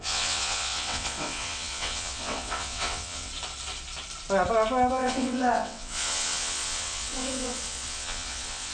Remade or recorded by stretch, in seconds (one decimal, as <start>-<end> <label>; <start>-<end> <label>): 0.0-3.3 remade; 3.3-4.9 recorded; 4.9-8.7 remade